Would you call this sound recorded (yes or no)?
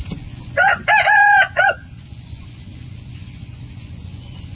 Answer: no